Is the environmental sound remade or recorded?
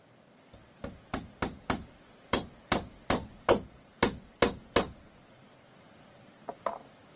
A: remade